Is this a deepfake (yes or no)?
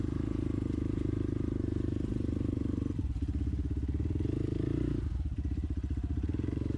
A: yes